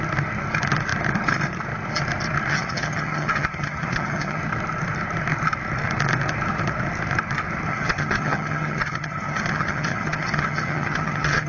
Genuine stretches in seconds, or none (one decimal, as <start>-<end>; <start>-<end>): 0.0-2.5; 4.4-7.7